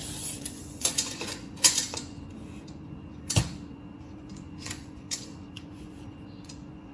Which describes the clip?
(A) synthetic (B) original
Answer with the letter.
A